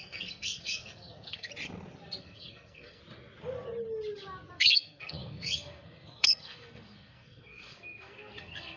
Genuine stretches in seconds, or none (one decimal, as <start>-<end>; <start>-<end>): 1.5-2.2; 3.0-4.5